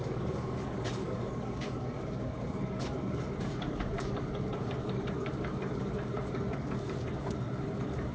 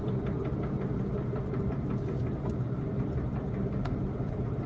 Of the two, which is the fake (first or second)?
first